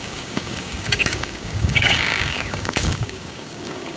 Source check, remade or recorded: remade